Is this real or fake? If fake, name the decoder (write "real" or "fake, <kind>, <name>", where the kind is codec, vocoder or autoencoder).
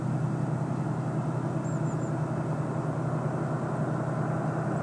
real